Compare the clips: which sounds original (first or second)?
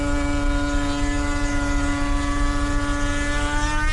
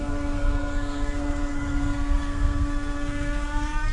first